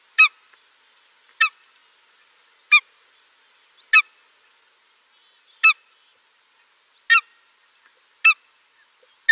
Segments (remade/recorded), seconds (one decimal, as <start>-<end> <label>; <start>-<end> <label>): 0.0-9.3 recorded